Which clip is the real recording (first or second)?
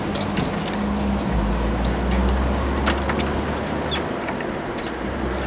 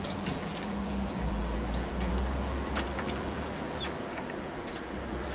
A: first